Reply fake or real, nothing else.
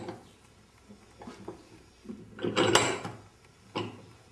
real